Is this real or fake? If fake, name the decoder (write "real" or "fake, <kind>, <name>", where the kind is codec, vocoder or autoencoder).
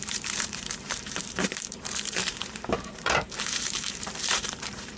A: fake, vocoder, BigVGAN v2